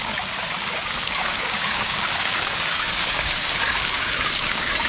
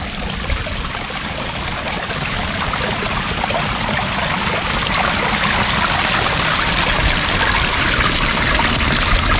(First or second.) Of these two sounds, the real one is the second